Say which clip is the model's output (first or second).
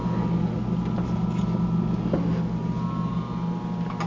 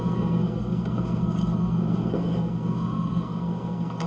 second